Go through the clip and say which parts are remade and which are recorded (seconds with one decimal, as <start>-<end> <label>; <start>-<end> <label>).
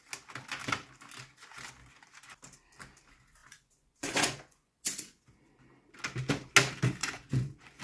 0.0-3.4 recorded; 3.4-5.2 remade; 5.2-7.0 recorded; 7.0-7.8 remade